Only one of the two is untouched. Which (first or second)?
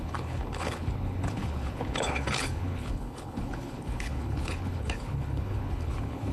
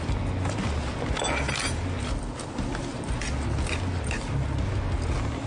second